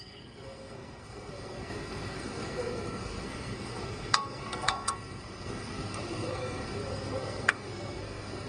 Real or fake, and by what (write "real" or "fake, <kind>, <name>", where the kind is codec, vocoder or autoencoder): fake, codec, SNAC